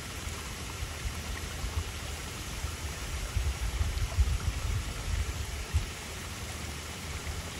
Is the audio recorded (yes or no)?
no